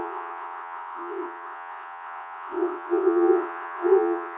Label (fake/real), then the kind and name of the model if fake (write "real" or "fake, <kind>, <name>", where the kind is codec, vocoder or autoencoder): fake, vocoder, WaveNeXt